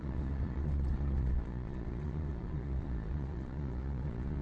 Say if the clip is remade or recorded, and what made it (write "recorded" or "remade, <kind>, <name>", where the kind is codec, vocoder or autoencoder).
remade, vocoder, Vocos